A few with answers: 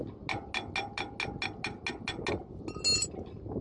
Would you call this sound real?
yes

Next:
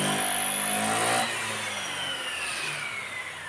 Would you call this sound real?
yes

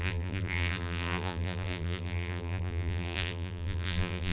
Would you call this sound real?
no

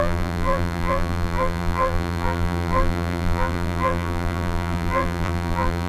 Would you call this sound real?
no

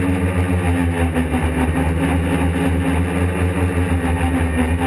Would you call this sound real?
yes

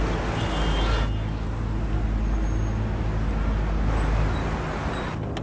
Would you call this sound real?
yes